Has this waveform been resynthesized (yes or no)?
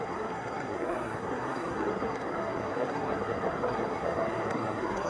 yes